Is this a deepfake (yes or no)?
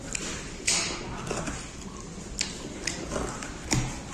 no